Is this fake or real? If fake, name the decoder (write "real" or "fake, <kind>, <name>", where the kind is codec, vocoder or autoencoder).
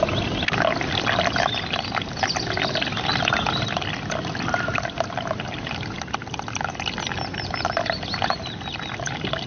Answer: real